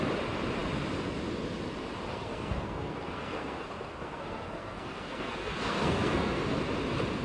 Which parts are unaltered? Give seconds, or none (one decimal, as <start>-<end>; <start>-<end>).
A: 0.0-2.1; 6.4-7.2